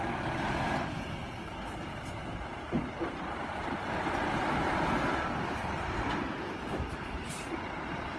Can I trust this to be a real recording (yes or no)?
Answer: no